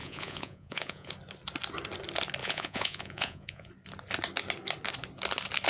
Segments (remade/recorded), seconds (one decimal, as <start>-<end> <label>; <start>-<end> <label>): 0.0-1.1 remade; 1.1-2.4 recorded; 2.4-3.7 remade; 3.7-5.7 recorded